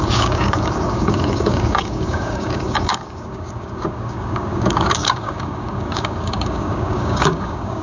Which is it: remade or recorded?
remade